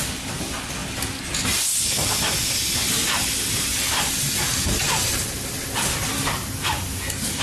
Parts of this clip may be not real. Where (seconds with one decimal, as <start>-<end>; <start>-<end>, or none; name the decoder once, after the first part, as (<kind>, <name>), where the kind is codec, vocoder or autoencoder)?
none